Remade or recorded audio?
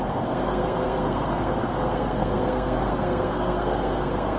remade